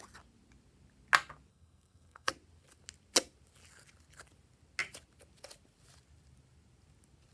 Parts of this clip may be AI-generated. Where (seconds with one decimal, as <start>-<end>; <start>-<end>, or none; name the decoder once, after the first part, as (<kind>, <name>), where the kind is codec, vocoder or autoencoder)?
1.5-2.3 (codec, SNAC)